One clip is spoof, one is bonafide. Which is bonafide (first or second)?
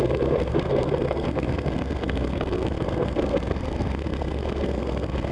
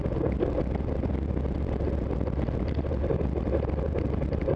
second